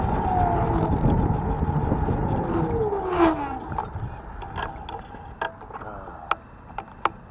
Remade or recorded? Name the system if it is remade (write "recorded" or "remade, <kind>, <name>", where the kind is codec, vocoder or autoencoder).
recorded